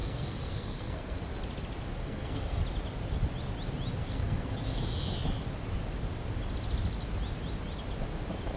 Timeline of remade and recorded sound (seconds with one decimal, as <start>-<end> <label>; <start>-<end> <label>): 0.0-1.2 remade; 1.2-2.0 recorded; 2.0-2.6 remade; 2.6-4.0 recorded; 4.0-4.8 remade; 4.8-8.6 recorded